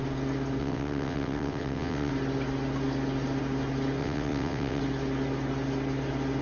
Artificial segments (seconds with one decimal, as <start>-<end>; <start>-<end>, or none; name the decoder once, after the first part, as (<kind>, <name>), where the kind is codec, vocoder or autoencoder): 0.6-2.1 (vocoder, WaveNeXt); 4.0-4.8